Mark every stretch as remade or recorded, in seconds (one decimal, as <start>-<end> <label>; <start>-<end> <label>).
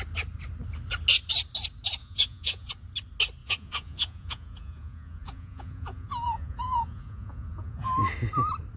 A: 0.0-2.0 recorded; 2.0-2.7 remade; 2.7-3.4 recorded; 3.4-7.9 remade; 7.9-8.8 recorded